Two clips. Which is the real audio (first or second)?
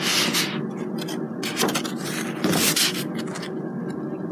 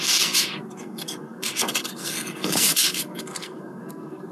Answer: first